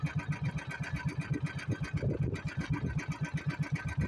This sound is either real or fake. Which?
real